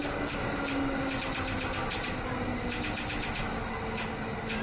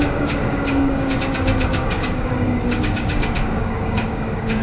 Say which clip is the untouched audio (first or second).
first